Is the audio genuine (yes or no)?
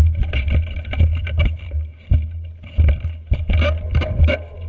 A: yes